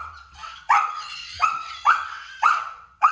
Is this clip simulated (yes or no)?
yes